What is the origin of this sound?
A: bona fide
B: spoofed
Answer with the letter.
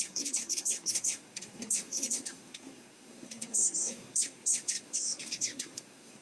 B